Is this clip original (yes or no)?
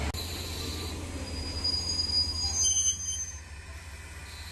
yes